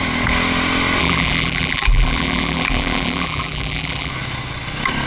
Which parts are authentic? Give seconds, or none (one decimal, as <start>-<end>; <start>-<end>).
0.0-1.0; 4.1-5.1